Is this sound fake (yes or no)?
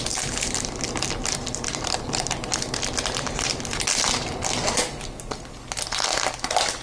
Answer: no